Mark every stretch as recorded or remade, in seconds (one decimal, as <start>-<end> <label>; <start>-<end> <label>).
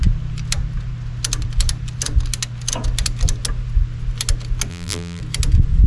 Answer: 0.0-4.7 recorded; 4.7-5.2 remade; 5.2-5.9 recorded